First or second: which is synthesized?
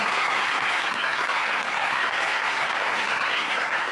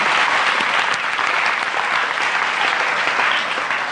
first